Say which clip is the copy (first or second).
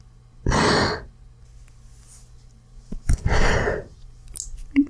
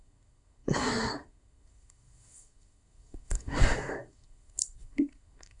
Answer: second